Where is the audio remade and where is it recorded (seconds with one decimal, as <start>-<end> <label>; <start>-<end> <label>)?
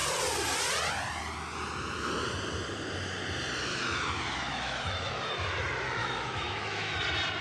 0.0-3.7 recorded; 3.7-5.1 remade; 5.1-6.0 recorded; 6.0-7.0 remade; 7.0-7.4 recorded